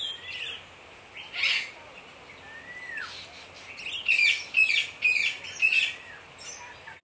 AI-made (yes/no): no